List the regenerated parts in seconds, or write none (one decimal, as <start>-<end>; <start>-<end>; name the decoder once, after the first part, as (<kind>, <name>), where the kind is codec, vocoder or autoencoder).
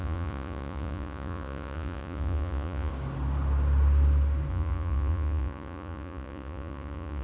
0.0-2.9 (vocoder, Vocos); 4.5-7.2